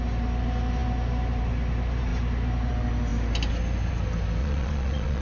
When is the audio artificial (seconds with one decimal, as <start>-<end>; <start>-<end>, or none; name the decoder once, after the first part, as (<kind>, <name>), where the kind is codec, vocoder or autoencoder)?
4.4-5.2 (vocoder, Vocos)